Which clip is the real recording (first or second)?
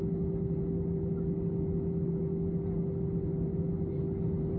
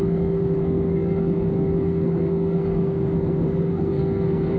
first